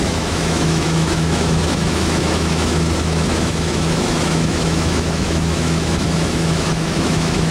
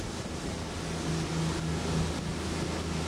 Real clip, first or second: second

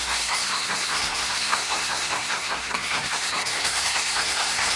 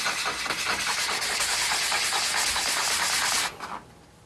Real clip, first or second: second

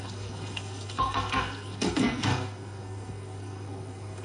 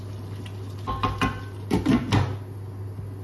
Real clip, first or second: second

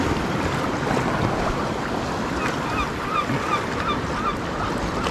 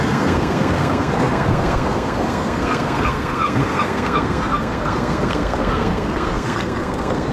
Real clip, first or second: first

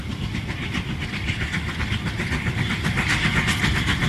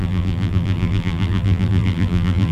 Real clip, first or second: first